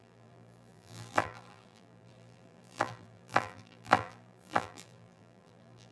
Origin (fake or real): fake